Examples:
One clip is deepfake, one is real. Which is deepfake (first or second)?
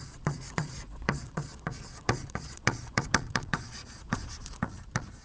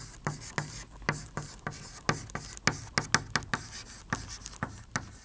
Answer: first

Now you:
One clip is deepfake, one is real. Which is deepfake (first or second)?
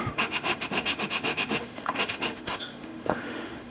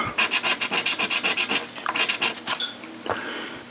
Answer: first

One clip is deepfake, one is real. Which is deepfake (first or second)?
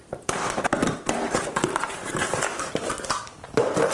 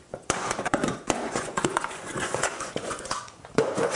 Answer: second